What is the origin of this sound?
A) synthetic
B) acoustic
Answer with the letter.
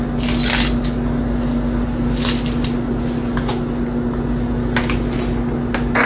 B